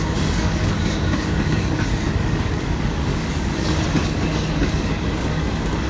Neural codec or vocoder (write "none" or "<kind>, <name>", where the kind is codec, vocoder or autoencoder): codec, DAC